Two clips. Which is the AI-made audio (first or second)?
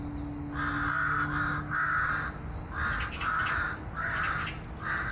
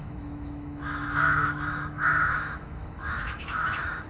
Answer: second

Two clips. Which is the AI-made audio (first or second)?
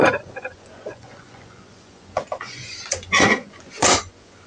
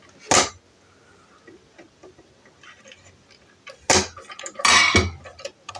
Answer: first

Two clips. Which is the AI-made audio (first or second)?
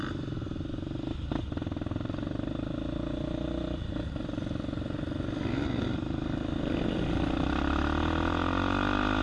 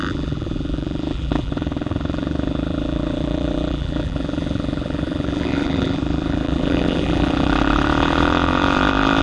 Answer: second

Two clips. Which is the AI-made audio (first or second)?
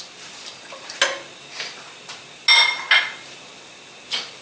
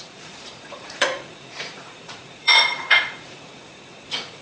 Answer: second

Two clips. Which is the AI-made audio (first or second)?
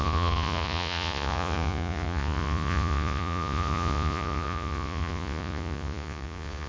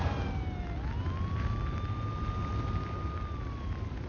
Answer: first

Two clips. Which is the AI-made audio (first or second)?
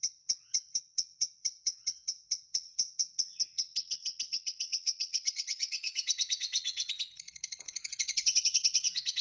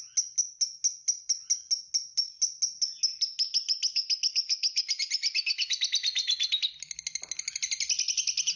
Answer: first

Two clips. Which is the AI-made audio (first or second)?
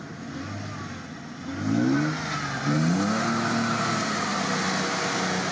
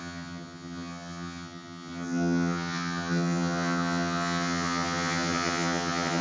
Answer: second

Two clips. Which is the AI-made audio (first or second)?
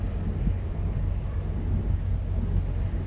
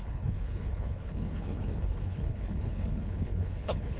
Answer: second